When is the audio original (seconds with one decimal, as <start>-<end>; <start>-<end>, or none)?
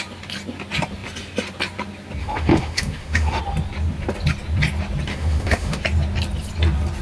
0.0-2.2; 3.4-5.1; 5.8-7.0